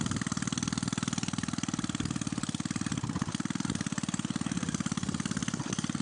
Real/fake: real